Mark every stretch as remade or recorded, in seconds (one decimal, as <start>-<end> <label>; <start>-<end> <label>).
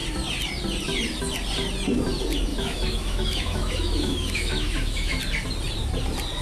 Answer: 0.0-2.5 recorded; 2.5-5.2 remade; 5.2-6.4 recorded